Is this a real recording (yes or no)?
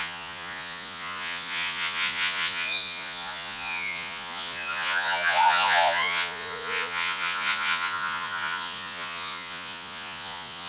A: no